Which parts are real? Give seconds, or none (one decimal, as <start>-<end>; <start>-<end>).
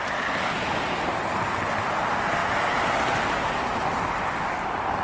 0.0-5.0